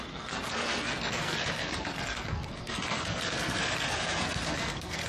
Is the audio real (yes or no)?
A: no